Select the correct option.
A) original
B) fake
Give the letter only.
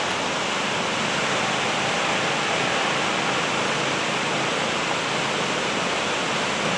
A